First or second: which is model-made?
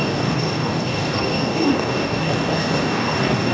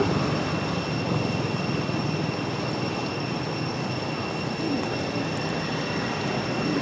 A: first